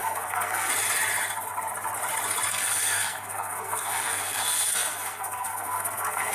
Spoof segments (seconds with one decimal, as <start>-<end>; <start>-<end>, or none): 0.0-0.7; 2.5-6.3